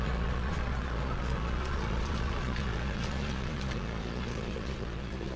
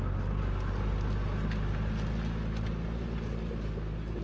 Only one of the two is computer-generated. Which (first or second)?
first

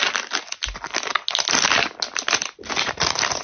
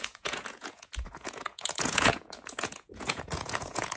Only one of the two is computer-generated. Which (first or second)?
second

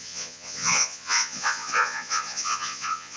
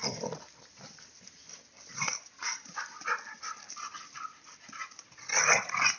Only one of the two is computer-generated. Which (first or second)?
first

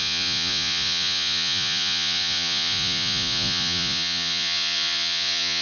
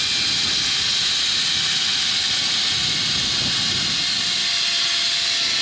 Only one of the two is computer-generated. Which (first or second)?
first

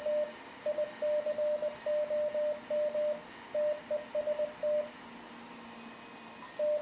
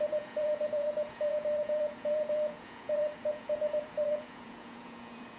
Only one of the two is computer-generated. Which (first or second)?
second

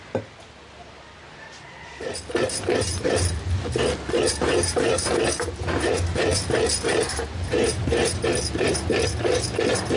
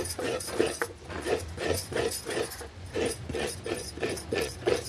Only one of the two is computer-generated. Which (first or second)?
second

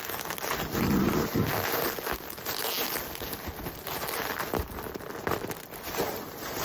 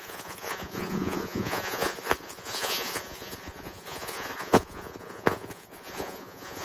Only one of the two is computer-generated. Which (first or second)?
second